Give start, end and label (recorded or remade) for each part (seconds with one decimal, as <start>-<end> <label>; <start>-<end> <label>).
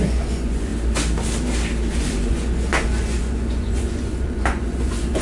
0.0-0.7 remade; 0.7-1.9 recorded; 1.9-5.2 remade